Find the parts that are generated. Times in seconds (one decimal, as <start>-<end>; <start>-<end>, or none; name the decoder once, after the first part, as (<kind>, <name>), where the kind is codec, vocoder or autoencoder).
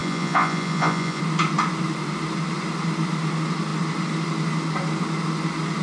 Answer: 0.0-1.2 (vocoder, Vocos)